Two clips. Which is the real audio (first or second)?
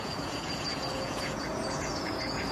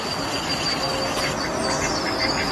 second